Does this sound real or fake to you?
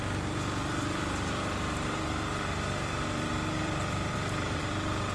fake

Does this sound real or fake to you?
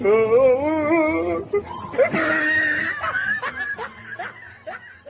real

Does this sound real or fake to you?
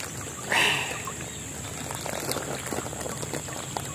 real